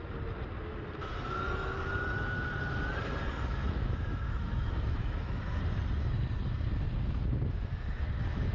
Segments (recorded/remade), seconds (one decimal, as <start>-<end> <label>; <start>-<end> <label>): 0.0-3.6 recorded; 3.6-5.6 remade; 5.6-8.5 recorded